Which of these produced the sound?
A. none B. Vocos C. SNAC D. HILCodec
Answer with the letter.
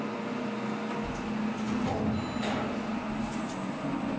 A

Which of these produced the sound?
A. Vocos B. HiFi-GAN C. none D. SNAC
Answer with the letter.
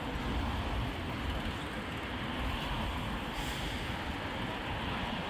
C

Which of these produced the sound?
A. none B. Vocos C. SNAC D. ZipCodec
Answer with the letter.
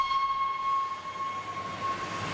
A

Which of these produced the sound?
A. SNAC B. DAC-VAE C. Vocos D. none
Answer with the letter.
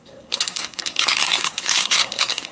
A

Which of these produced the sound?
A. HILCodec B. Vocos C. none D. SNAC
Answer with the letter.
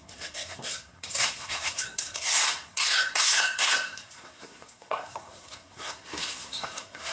D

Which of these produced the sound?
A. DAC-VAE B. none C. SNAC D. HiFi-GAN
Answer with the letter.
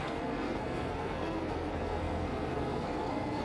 C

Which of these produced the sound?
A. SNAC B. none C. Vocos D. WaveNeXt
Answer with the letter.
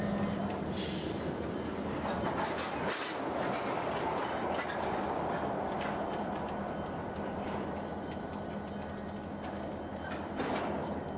B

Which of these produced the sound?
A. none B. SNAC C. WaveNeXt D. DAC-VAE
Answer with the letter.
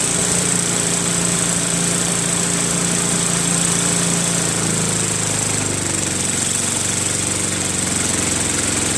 A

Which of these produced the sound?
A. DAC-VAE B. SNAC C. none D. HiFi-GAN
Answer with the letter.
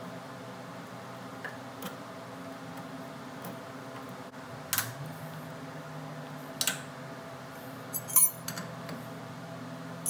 C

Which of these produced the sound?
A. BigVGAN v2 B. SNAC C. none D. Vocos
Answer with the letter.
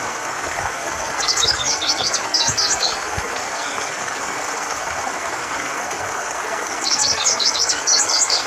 B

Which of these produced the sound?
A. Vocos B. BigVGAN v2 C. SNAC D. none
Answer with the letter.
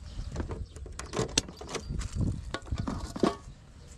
D